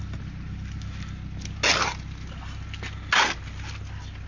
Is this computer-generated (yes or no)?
no